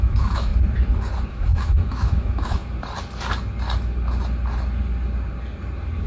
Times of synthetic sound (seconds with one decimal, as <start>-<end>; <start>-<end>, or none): 0.0-0.5; 1.3-2.6